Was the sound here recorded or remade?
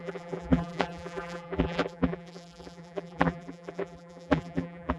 remade